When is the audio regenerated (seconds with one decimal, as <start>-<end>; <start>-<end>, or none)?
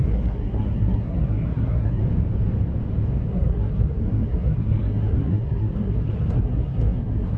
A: 0.0-2.0; 3.2-7.4